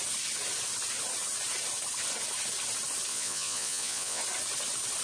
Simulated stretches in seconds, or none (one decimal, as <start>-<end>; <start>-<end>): 3.1-4.2